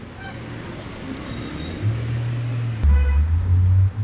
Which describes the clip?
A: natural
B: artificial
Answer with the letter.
A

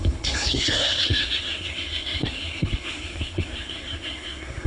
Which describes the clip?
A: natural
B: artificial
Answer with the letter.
B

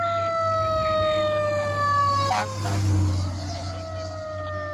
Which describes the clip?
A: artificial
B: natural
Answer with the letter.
B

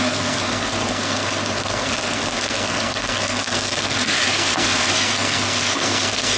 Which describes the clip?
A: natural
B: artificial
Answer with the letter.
B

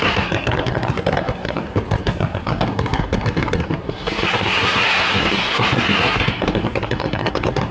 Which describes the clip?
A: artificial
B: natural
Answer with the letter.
A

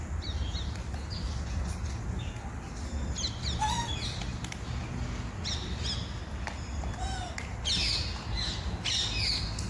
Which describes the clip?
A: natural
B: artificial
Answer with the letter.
A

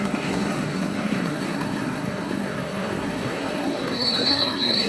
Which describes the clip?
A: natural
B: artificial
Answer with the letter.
B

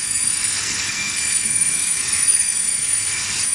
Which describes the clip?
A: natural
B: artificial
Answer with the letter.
B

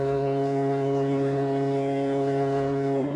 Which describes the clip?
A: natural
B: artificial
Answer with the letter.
B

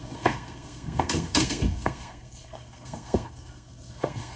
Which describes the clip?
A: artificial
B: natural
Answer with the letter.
A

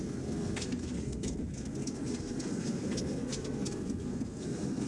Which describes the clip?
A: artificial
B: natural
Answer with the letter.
A